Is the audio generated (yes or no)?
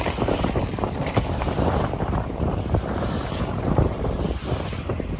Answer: yes